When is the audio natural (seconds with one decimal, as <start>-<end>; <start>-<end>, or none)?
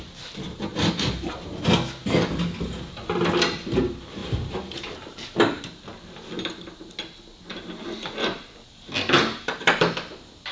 0.0-4.2; 5.6-9.2; 9.7-10.5